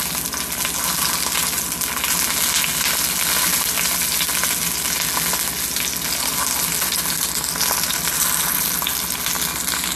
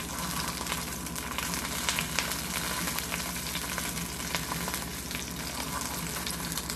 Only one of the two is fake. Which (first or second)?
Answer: second